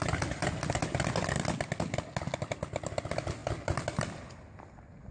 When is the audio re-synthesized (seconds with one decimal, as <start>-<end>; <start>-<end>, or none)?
none